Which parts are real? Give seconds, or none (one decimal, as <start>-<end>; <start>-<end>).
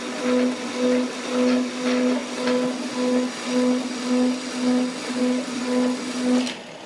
0.0-6.9